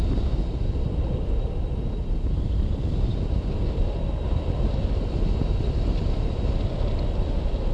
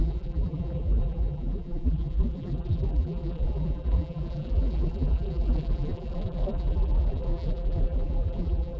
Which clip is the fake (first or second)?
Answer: second